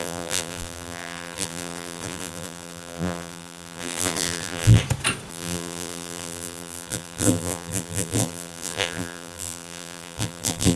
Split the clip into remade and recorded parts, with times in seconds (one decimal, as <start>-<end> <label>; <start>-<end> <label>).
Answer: 0.0-4.8 remade; 4.8-5.3 recorded; 5.3-10.8 remade